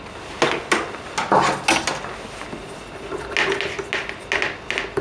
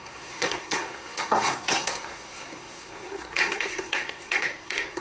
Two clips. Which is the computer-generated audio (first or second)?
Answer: second